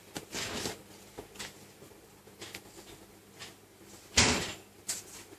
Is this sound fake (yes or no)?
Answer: no